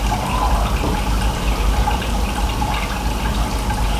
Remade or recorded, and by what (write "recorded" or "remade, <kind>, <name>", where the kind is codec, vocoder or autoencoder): recorded